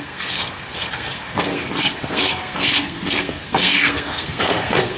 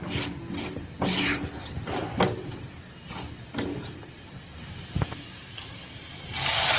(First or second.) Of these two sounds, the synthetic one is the first